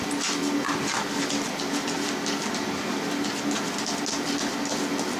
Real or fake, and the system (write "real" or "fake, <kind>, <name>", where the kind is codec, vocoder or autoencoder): real